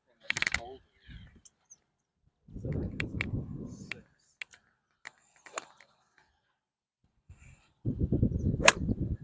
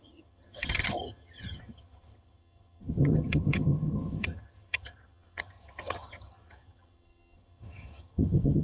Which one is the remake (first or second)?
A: second